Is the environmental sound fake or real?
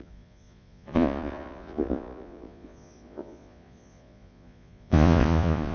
fake